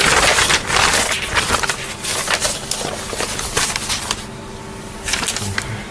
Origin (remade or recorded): recorded